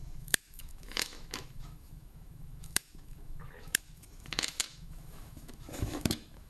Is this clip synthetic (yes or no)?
yes